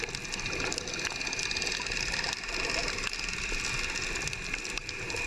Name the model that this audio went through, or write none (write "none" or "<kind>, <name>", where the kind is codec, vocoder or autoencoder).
none